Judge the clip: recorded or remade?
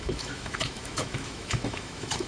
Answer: remade